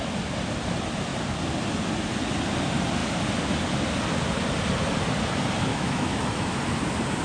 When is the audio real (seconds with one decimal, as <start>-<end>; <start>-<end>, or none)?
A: 0.0-5.7; 6.6-7.2